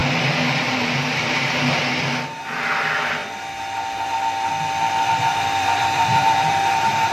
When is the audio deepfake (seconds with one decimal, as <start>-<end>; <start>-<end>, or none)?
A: 0.0-1.8; 5.3-7.1